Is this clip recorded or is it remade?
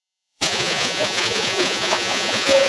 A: remade